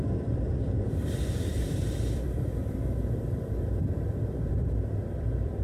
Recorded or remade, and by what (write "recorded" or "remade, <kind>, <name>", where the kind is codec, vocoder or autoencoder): remade, vocoder, BigVGAN v2